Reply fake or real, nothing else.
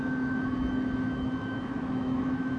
fake